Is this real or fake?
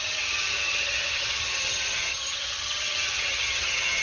fake